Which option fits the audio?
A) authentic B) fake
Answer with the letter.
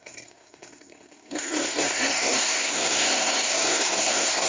B